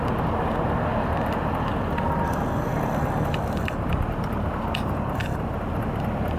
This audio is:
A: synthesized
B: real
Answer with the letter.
B